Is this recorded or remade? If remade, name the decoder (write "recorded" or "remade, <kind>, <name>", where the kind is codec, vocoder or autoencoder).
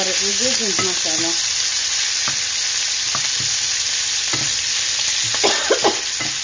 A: recorded